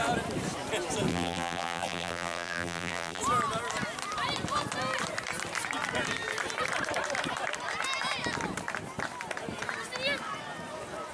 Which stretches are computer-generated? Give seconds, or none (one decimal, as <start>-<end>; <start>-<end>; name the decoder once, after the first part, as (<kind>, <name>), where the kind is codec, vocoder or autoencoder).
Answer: 1.1-3.2 (vocoder, BigVGAN v2)